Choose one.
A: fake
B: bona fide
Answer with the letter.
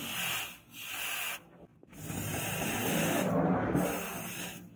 B